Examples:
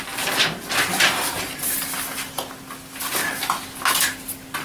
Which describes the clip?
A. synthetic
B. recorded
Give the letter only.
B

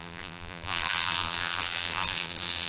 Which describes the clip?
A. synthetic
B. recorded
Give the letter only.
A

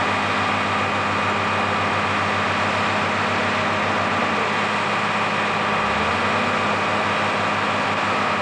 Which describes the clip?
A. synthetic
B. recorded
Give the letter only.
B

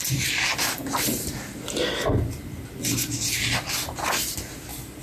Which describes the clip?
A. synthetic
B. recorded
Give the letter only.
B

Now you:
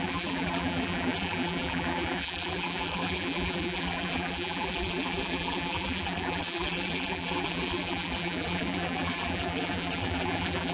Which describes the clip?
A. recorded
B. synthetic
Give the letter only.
B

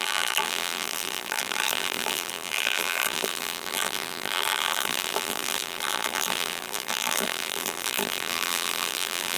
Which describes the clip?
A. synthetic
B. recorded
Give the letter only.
A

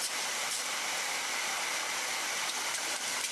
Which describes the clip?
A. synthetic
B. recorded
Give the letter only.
A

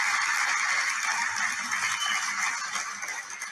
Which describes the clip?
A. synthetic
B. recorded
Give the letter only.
B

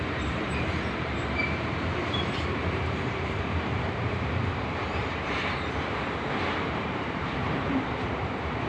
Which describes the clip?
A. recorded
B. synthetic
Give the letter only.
B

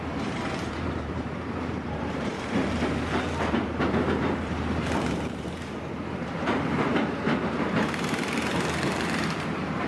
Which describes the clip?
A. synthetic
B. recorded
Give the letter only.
A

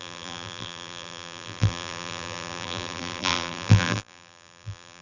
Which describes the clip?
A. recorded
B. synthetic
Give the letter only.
B